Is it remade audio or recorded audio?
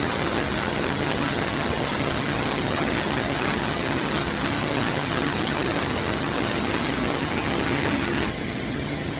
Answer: remade